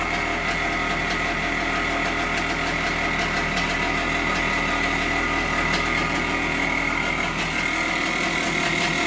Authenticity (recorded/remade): recorded